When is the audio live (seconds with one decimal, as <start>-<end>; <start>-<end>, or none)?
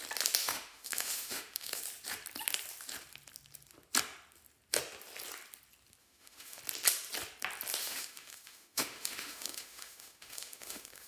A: 0.0-0.4; 1.8-6.0; 6.6-7.8